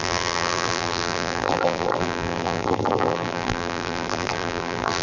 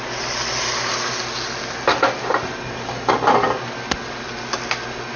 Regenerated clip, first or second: first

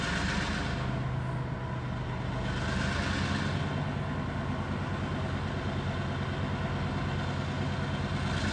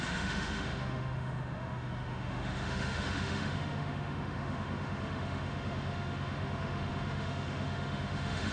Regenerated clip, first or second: second